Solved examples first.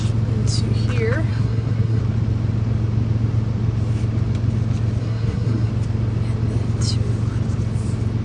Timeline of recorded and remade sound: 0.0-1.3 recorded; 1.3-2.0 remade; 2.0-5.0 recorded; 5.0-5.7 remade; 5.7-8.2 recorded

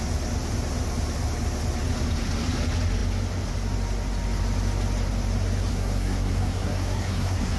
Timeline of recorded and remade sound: 0.0-5.7 recorded; 5.7-7.6 remade

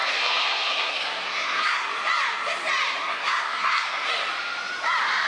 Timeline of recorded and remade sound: 0.0-1.9 remade; 1.9-3.0 recorded; 3.0-4.1 remade; 4.1-5.3 recorded